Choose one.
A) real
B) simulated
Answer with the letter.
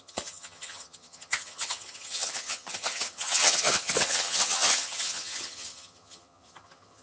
B